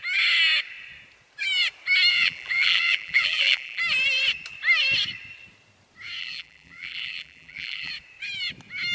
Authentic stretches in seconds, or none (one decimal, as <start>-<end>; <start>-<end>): 0.0-2.1; 3.8-6.2; 7.9-8.9